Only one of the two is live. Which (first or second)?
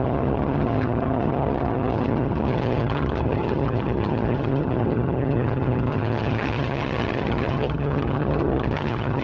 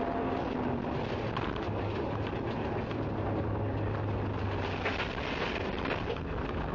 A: second